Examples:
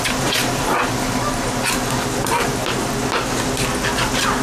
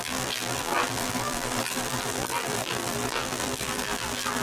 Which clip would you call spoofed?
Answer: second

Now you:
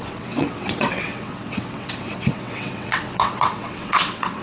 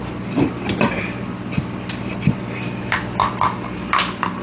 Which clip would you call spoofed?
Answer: first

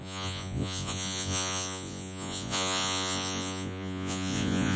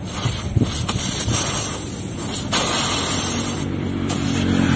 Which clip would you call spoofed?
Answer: first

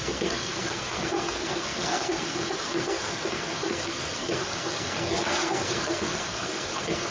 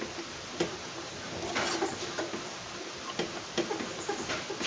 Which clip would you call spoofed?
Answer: first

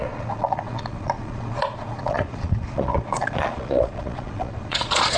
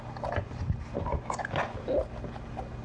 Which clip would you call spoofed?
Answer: first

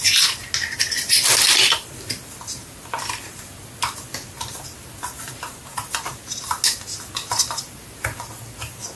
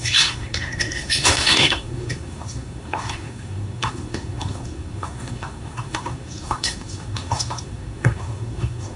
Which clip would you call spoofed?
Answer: second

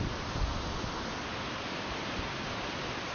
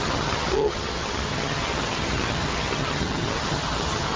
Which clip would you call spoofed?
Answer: second